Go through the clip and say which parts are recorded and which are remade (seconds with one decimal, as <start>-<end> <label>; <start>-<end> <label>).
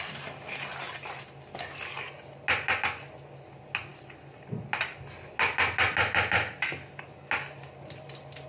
0.0-8.5 recorded